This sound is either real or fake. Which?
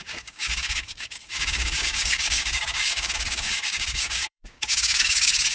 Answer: fake